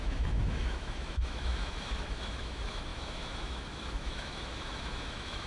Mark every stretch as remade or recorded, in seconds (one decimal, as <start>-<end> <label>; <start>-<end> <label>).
0.0-5.5 remade